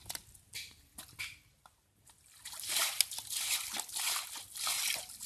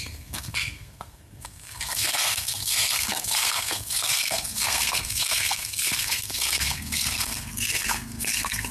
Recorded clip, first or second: first